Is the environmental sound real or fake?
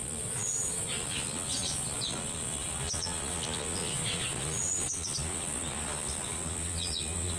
fake